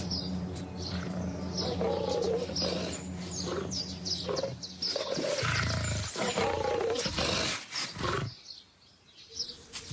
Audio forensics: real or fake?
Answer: real